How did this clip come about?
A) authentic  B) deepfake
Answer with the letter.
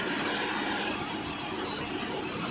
B